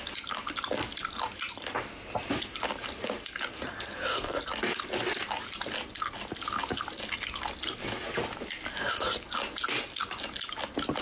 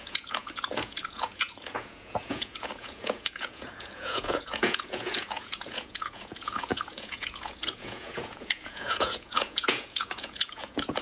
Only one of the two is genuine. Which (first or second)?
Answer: first